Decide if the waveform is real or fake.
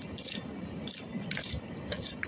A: real